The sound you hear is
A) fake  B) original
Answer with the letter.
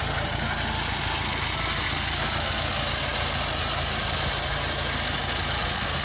B